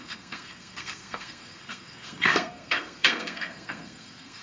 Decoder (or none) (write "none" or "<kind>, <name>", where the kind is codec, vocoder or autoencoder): codec, SNAC